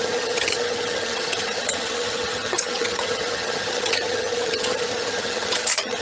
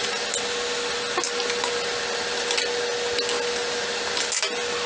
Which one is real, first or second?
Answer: second